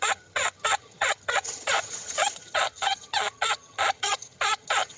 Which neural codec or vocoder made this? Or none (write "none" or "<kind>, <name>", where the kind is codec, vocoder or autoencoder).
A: vocoder, HiFi-GAN